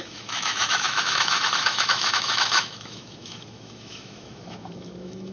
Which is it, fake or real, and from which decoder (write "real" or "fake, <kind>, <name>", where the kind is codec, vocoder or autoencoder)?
fake, autoencoder, DAC-VAE